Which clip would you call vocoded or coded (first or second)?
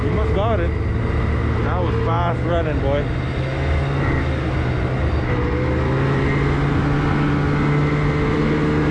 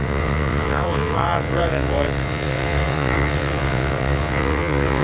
second